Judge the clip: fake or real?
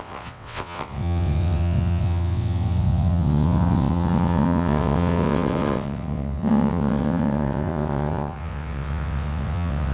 fake